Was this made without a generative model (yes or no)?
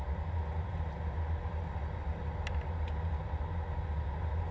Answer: yes